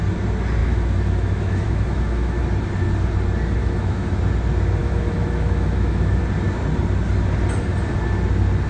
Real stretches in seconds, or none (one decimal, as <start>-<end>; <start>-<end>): 0.0-0.6; 2.4-3.6; 4.2-4.8; 6.2-8.7